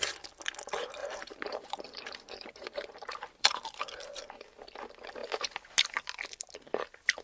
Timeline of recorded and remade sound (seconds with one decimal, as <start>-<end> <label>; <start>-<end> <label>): 0.0-1.0 recorded; 1.0-3.8 remade; 3.8-7.2 recorded

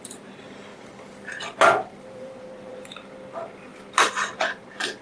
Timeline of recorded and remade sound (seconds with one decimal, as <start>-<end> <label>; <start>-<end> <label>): 0.0-0.7 remade; 0.7-2.1 recorded; 2.1-3.7 remade; 3.7-4.6 recorded; 4.6-5.0 remade